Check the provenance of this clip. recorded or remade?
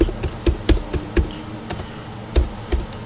recorded